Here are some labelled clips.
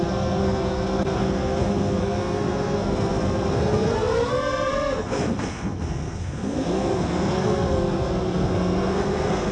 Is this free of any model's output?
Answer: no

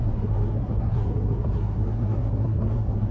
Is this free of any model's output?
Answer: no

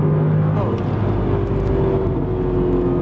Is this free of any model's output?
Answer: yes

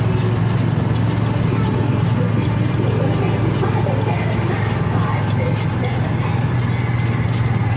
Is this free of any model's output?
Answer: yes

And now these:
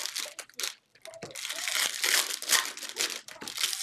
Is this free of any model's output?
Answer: yes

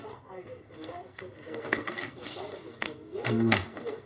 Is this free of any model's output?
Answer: no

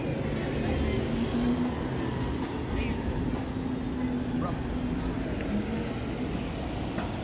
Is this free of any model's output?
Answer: yes